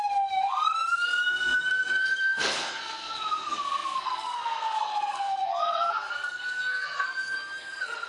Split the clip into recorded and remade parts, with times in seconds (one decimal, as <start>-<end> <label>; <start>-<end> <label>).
0.0-8.1 remade